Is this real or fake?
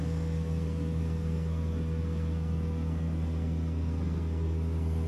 fake